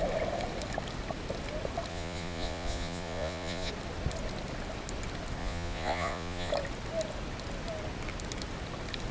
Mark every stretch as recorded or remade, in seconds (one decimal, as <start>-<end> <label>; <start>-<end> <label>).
0.0-1.9 recorded; 1.9-3.7 remade; 3.7-5.4 recorded; 5.4-6.5 remade; 6.5-9.1 recorded